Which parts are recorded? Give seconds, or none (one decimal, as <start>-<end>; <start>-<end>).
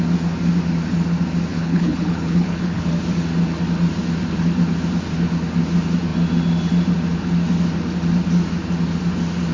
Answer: 0.0-1.5; 2.9-9.5